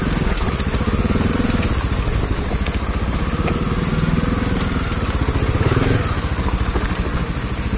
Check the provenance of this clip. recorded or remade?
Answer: recorded